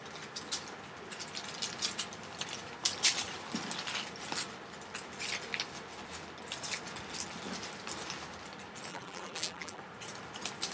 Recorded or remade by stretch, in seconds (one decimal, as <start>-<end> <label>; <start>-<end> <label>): 0.0-8.9 recorded; 8.9-9.8 remade; 9.8-10.7 recorded